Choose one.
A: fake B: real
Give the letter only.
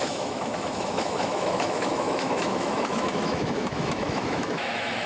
A